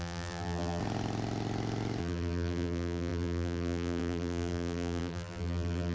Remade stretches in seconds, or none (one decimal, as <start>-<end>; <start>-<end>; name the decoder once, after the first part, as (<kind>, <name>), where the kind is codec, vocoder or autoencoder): 0.0-0.8 (vocoder, BigVGAN v2); 2.0-5.9